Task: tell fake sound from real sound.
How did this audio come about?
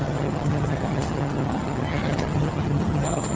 fake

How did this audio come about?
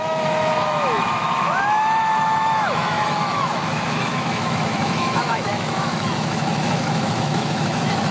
fake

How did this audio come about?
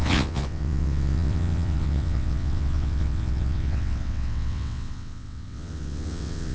fake